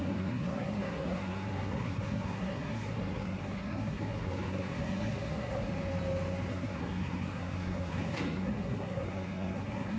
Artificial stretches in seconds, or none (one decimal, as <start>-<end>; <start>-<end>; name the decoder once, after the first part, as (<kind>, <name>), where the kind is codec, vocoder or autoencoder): 0.0-5.7 (codec, SNAC); 6.5-10.0